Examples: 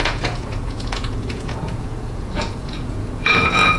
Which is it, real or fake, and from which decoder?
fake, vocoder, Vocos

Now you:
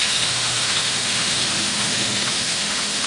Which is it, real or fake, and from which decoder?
fake, autoencoder, DAC-VAE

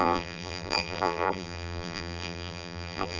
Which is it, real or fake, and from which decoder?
fake, vocoder, BigVGAN v2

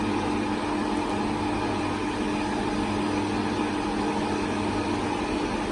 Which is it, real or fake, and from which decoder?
real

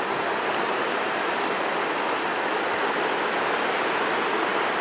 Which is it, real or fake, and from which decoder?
real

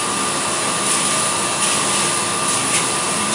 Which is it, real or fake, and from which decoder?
real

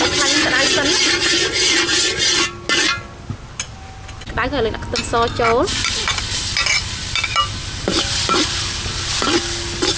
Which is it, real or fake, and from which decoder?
real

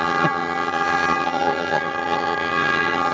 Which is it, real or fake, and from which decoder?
fake, vocoder, HiFi-GAN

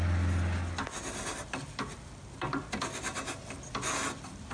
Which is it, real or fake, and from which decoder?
real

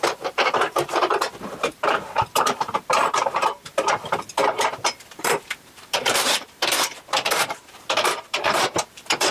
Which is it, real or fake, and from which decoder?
fake, vocoder, BigVGAN v2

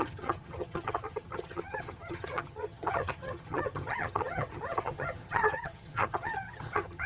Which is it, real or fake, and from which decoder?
fake, vocoder, HiFi-GAN